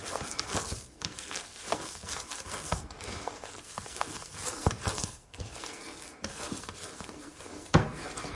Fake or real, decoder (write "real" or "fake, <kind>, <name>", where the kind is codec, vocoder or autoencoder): fake, codec, SNAC